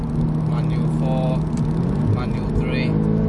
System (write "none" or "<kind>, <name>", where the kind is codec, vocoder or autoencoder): none